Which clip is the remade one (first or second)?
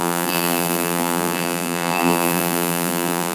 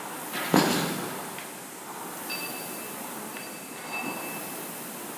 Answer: first